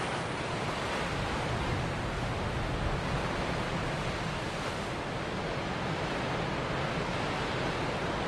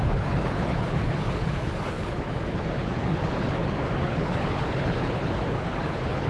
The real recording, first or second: first